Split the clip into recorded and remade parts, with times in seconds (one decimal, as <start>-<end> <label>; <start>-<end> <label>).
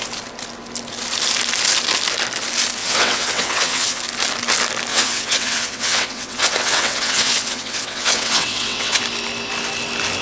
0.0-2.8 recorded; 2.8-4.0 remade; 4.0-4.9 recorded; 4.9-9.0 remade; 9.0-10.2 recorded